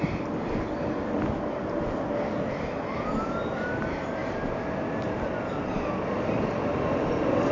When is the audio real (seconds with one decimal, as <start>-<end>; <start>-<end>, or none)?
0.0-7.5